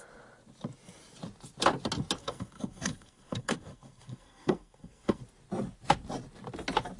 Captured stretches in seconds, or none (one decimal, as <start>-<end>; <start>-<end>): 0.0-2.2; 5.2-7.0